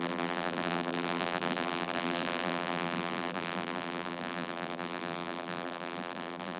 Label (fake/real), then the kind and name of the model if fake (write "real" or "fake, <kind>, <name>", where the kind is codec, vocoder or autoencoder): fake, vocoder, BigVGAN v2